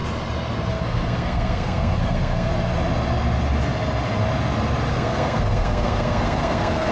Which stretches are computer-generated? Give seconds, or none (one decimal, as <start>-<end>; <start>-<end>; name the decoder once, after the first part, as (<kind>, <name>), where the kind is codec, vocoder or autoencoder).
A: 0.7-2.5 (codec, SNAC); 4.9-6.9